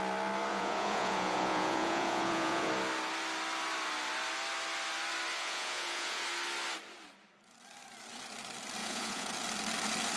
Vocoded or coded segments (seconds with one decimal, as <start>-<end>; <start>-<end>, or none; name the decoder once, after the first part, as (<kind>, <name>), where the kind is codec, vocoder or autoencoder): 0.5-2.7 (vocoder, Vocos); 5.4-6.2; 8.8-9.3